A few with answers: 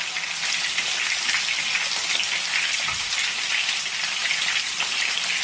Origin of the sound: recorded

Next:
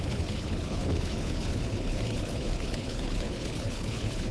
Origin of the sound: remade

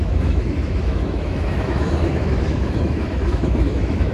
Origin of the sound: remade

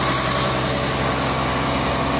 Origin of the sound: recorded